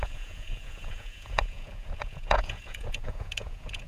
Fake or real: fake